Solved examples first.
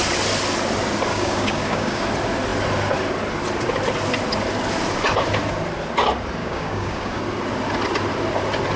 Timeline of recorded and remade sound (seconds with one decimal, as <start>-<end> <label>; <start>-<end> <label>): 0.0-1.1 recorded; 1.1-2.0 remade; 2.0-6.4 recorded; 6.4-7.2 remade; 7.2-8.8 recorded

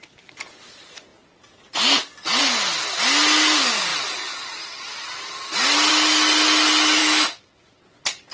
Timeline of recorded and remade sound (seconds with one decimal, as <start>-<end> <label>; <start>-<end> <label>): 0.0-7.0 recorded; 7.0-7.8 remade; 7.8-8.3 recorded

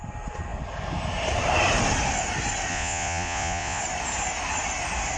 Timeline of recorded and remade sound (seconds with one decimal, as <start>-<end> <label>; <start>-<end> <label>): 0.0-2.7 recorded; 2.7-3.8 remade; 3.8-5.2 recorded

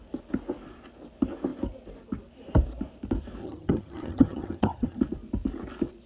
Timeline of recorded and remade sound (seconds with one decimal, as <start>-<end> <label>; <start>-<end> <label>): 0.0-3.4 recorded; 3.4-5.0 remade; 5.0-6.1 recorded

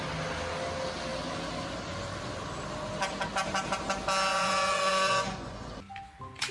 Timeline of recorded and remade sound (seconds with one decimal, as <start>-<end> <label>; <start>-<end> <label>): 0.0-4.3 recorded; 4.3-5.7 remade; 5.7-6.5 recorded

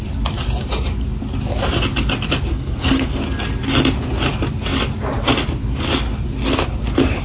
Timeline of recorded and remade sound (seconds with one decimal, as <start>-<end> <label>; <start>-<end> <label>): 0.0-2.5 recorded; 2.5-3.2 remade; 3.2-7.2 recorded

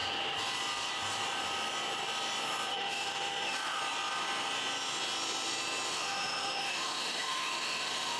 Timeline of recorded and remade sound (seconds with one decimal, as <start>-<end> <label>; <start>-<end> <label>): 0.0-2.7 recorded; 2.7-3.8 remade; 3.8-5.9 recorded; 5.9-8.2 remade